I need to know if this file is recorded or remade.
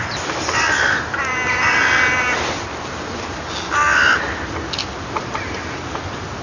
recorded